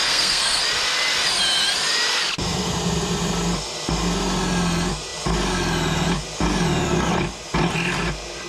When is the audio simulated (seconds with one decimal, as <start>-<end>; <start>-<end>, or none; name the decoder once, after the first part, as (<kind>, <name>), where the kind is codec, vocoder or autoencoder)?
0.0-0.6 (codec, SNAC)